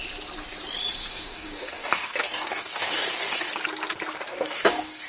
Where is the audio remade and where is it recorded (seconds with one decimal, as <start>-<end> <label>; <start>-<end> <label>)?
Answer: 0.0-1.0 recorded; 1.0-3.5 remade; 3.5-4.3 recorded; 4.3-5.1 remade